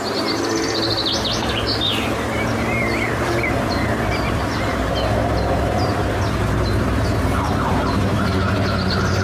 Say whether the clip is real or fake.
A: fake